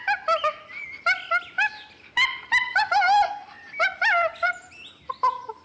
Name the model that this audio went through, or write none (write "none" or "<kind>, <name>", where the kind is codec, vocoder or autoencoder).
none